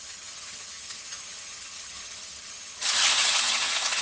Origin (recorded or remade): remade